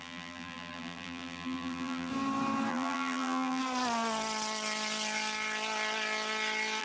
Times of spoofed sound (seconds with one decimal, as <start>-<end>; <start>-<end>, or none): 0.0-2.1; 2.7-3.6